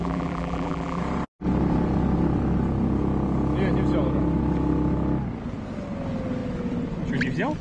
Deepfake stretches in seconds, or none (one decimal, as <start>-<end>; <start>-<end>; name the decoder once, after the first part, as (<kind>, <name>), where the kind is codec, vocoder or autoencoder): 0.0-1.0 (vocoder, BigVGAN v2)